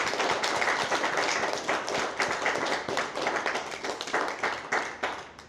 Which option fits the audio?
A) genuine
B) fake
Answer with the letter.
A